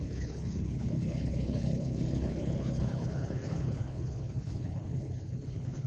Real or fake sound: fake